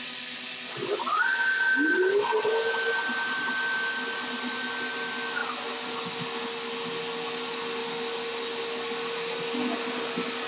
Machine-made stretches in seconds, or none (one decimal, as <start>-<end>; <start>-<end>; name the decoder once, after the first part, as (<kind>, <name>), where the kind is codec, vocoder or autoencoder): 1.9-2.5 (vocoder, WaveNeXt)